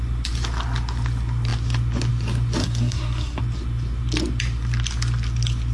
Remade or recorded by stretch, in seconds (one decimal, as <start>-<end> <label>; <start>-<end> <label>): 0.0-2.6 recorded; 2.6-3.4 remade; 3.4-5.7 recorded

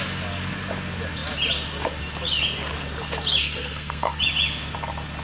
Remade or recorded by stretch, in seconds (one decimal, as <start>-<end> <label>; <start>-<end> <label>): 0.0-3.4 recorded; 3.4-4.2 remade; 4.2-5.2 recorded

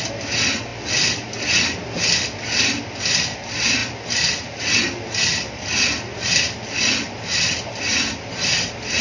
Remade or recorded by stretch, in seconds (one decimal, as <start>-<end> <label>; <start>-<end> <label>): 0.0-9.0 recorded

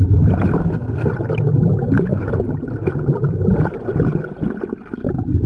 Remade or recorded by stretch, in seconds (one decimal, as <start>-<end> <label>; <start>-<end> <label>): 0.0-0.6 recorded; 0.6-1.1 remade; 1.1-5.5 recorded

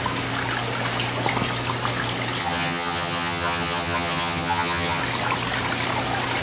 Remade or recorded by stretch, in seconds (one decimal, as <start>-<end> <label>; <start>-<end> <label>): 0.0-2.4 recorded; 2.4-5.0 remade; 5.0-6.4 recorded